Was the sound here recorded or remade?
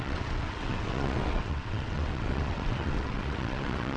remade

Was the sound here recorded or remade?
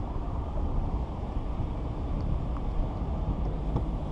remade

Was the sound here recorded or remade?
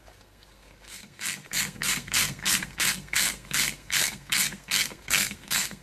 remade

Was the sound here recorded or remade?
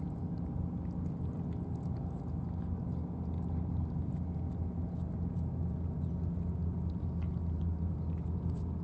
recorded